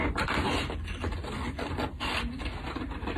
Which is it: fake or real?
real